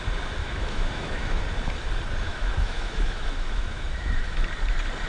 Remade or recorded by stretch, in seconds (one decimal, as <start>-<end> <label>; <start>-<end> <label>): 0.0-0.4 recorded; 0.4-1.4 remade; 1.4-2.3 recorded; 2.3-4.4 remade; 4.4-5.1 recorded